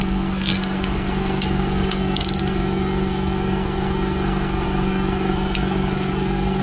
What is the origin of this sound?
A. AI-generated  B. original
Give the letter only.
A